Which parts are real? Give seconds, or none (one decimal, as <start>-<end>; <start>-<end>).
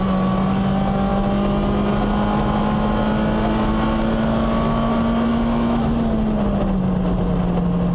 0.0-5.3; 5.9-7.9